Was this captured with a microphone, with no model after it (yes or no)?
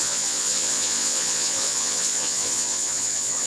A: no